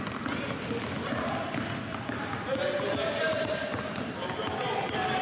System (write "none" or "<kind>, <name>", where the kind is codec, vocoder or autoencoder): none